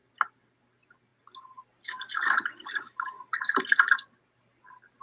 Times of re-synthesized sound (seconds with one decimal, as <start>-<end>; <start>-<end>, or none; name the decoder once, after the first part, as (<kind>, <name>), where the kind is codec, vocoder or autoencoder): none

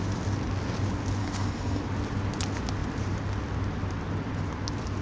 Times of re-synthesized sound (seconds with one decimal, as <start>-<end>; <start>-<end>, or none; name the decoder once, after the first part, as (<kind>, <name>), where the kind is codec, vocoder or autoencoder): 1.2-1.8 (codec, SNAC)

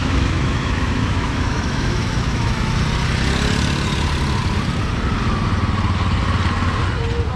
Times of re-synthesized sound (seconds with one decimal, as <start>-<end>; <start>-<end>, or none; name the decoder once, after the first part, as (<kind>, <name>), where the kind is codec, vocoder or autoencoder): 0.0-2.7 (autoencoder, DAC-VAE)

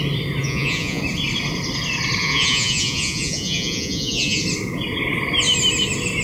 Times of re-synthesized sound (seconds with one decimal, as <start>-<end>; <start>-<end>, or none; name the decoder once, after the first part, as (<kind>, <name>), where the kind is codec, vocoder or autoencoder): 0.4-1.0 (vocoder, Vocos); 2.2-4.4

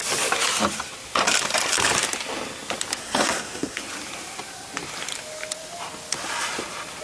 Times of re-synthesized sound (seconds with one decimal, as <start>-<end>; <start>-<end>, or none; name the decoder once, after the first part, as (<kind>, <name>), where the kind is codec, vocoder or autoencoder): 3.0-3.8 (codec, SNAC)

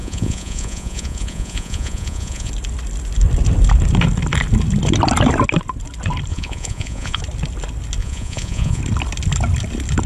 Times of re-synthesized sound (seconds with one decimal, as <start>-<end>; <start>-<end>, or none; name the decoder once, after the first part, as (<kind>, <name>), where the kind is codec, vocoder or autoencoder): 0.0-2.5 (vocoder, Vocos); 6.3-7.2; 8.0-8.8

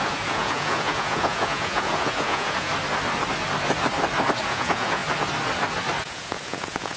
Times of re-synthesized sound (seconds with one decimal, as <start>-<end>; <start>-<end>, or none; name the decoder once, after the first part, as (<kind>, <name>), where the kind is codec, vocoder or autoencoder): 0.0-2.7 (vocoder, Vocos); 4.4-5.0; 6.0-7.0